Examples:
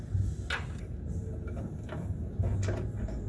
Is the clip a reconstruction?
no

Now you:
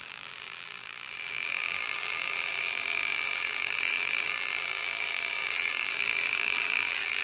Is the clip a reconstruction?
yes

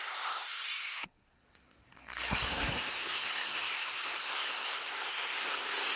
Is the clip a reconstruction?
yes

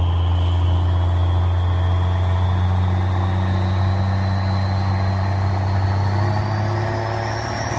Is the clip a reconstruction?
no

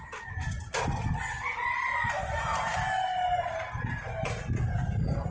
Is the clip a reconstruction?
no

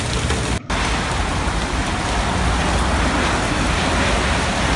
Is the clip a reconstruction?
no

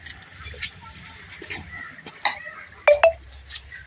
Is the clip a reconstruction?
no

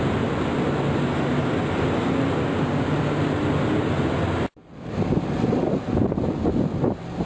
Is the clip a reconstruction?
no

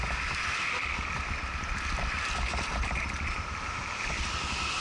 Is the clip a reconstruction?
no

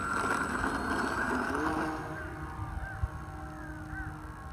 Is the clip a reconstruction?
no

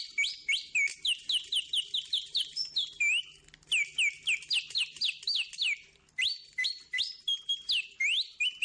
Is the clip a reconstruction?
no